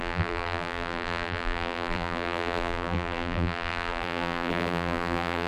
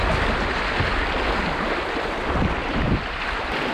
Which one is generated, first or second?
first